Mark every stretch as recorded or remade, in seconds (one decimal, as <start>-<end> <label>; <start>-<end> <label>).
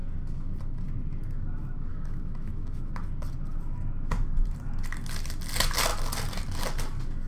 0.0-1.9 recorded; 1.9-2.9 remade; 2.9-7.3 recorded